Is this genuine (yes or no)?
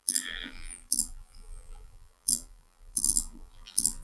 no